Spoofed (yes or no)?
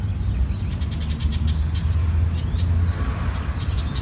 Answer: no